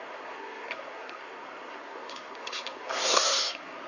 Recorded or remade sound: remade